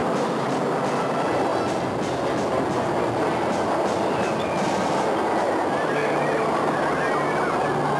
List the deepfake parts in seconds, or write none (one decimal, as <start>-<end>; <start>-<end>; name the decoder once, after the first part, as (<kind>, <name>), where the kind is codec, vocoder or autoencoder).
none